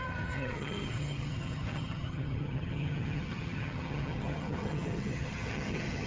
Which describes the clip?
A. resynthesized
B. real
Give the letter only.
A